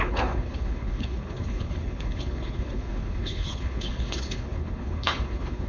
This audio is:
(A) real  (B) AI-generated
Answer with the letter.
B